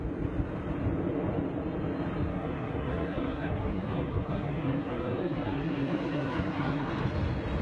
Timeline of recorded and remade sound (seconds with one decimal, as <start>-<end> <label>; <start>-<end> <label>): 0.0-2.3 recorded; 2.3-6.9 remade; 6.9-7.6 recorded

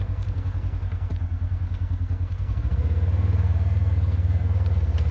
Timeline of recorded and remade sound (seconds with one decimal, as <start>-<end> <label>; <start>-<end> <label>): 0.0-5.1 remade

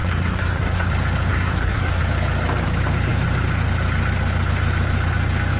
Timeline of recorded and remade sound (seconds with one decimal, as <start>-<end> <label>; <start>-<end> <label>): 0.0-0.9 remade; 0.9-1.3 recorded; 1.3-2.0 remade; 2.0-5.6 recorded

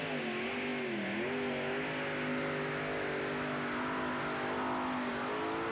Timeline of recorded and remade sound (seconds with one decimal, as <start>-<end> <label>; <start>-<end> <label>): 0.0-5.7 recorded

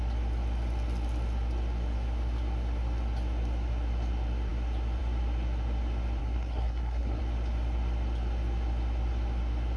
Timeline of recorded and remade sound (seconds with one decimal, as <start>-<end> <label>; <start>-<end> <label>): 0.0-6.2 recorded; 6.2-7.2 remade; 7.2-9.8 recorded

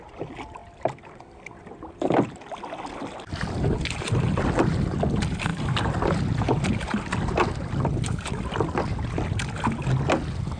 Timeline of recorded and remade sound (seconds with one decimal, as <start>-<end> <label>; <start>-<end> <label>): 0.0-10.6 recorded

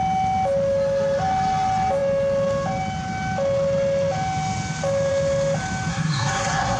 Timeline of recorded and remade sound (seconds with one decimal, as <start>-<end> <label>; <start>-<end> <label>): 0.0-5.9 recorded; 5.9-6.8 remade

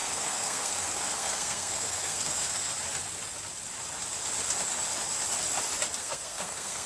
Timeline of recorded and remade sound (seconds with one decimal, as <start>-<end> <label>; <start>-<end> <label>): 0.0-2.7 remade; 2.7-6.0 recorded; 6.0-6.9 remade